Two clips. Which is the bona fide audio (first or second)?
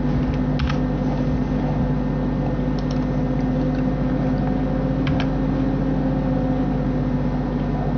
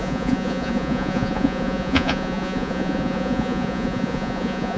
first